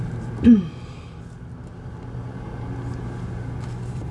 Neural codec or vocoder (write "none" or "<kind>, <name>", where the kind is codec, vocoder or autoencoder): none